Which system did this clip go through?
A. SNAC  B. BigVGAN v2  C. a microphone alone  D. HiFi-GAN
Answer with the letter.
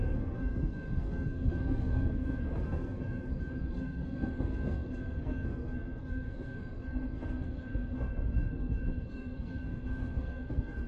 A